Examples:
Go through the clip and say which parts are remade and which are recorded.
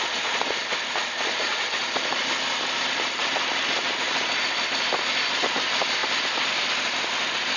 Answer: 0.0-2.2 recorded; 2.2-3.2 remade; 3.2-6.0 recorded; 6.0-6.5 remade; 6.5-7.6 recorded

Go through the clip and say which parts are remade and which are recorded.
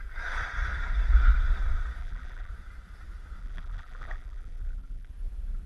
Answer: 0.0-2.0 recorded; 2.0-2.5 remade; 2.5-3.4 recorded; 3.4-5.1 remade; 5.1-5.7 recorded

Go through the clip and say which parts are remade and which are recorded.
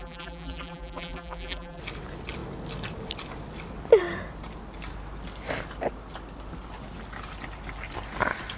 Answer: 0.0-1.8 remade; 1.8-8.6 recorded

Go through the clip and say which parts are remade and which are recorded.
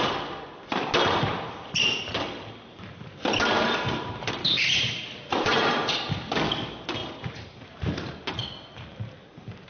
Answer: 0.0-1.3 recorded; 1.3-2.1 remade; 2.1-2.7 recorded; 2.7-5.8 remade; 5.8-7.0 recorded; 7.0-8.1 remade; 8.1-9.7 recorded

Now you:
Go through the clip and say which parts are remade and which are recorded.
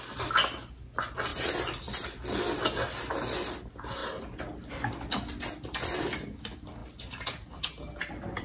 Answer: 0.0-6.8 recorded; 6.8-7.7 remade; 7.7-8.4 recorded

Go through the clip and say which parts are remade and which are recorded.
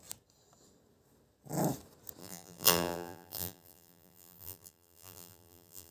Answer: 0.0-2.2 recorded; 2.2-5.9 remade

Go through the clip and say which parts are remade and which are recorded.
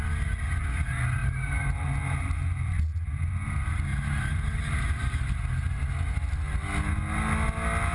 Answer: 0.0-1.2 recorded; 1.2-2.4 remade; 2.4-3.9 recorded; 3.9-5.4 remade; 5.4-7.9 recorded